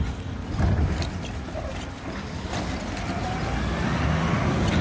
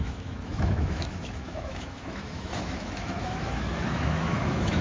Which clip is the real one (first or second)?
first